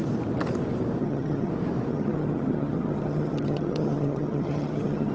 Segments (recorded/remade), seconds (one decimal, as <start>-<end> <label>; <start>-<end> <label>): 0.0-1.0 recorded; 1.0-1.5 remade; 1.5-1.9 recorded; 1.9-5.1 remade